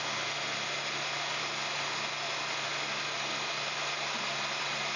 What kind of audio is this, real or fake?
real